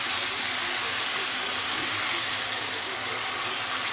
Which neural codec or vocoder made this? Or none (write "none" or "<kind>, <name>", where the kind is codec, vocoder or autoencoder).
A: none